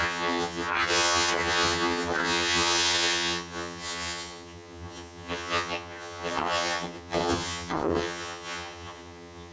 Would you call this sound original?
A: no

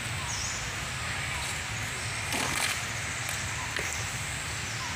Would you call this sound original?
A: yes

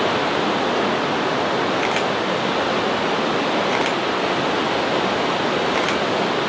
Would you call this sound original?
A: yes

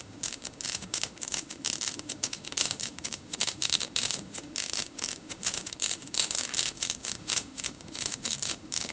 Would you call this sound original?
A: no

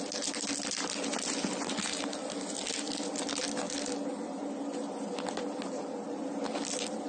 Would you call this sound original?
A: yes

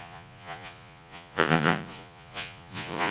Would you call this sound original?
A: no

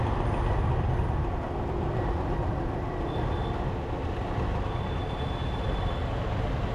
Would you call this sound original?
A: yes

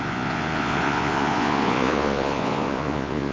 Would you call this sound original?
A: no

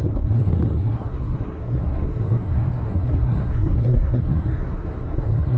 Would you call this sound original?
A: no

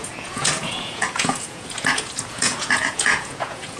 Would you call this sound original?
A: no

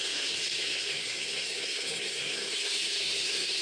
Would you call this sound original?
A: no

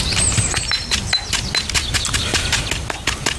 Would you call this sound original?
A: yes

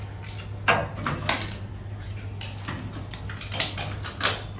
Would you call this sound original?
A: yes